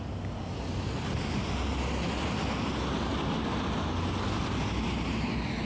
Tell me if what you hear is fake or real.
real